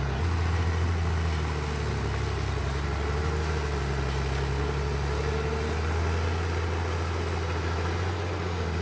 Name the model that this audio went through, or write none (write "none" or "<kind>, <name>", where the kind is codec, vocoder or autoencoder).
none